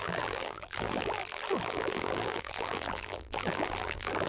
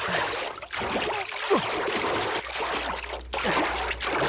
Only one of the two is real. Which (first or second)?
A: second